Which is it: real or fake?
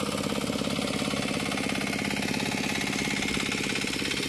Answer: real